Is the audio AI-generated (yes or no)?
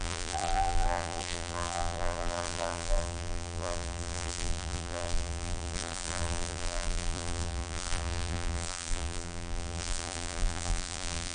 yes